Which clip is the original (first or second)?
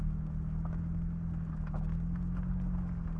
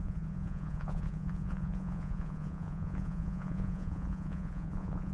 first